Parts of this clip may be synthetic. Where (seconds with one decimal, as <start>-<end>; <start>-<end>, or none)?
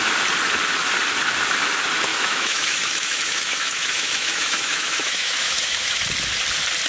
2.1-6.0